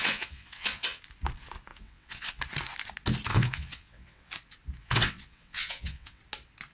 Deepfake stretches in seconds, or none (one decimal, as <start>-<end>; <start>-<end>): 0.0-1.0; 1.7-2.4; 3.3-4.3; 4.8-6.2